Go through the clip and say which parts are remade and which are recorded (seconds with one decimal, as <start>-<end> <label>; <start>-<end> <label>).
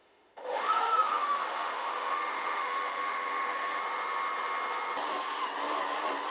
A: 0.0-3.8 remade; 3.8-6.3 recorded